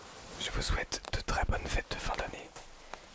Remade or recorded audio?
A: recorded